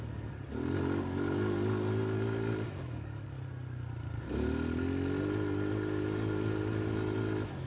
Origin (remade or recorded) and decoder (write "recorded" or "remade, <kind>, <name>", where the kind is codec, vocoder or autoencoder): recorded